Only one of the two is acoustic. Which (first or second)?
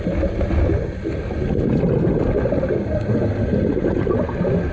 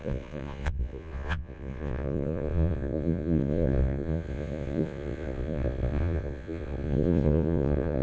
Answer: first